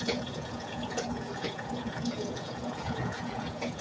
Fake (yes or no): yes